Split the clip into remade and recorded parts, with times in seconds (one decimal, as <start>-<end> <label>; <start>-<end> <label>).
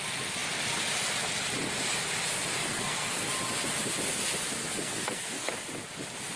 0.0-2.6 recorded; 2.6-3.3 remade; 3.3-4.6 recorded; 4.6-5.5 remade; 5.5-6.4 recorded